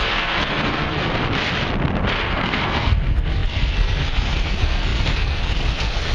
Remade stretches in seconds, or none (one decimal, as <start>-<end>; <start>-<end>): 0.0-1.2; 2.1-6.1